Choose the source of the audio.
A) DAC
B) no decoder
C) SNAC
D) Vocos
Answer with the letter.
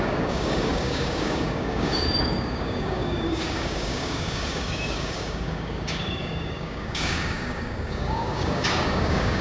A